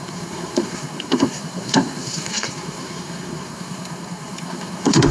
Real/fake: fake